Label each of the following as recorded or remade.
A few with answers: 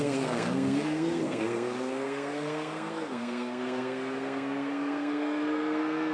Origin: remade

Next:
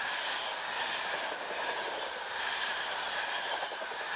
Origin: recorded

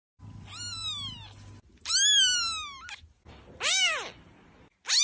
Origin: recorded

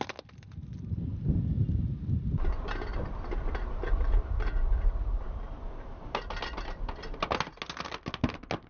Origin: recorded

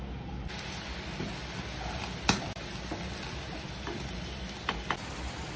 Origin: recorded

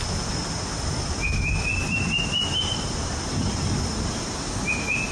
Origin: recorded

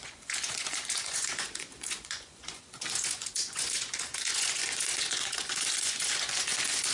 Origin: remade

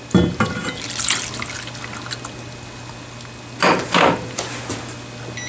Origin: recorded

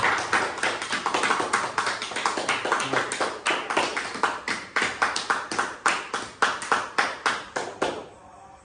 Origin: recorded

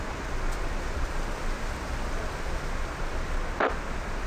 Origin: recorded